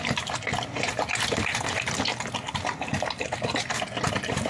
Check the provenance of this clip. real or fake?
real